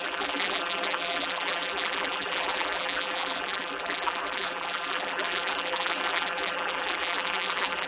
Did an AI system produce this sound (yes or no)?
yes